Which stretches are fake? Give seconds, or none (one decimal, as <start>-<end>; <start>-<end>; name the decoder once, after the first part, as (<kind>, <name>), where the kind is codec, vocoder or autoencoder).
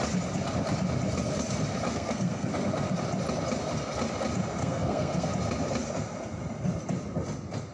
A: 1.9-2.5 (codec, SNAC); 4.6-5.3